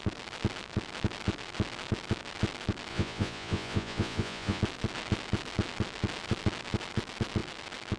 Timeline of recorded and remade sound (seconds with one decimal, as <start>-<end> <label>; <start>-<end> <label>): 0.0-2.9 recorded; 2.9-4.6 remade; 4.6-8.0 recorded